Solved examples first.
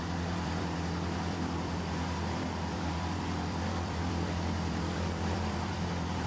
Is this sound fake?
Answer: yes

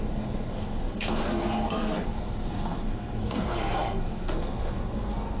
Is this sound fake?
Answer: yes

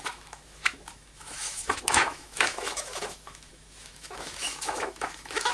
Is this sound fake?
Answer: yes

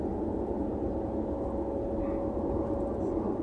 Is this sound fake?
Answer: no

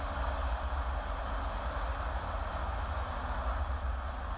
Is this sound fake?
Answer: no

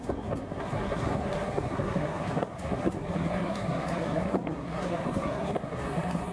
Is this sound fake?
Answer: yes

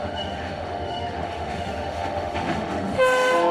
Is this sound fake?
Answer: yes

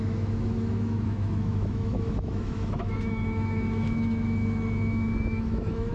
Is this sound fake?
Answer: yes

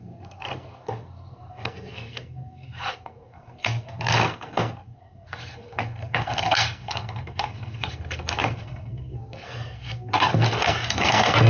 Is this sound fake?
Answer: yes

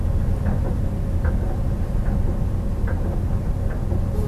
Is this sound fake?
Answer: no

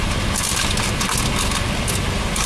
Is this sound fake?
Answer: no